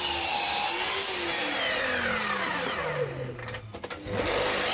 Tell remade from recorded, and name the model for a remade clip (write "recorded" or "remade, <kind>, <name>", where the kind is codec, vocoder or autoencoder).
recorded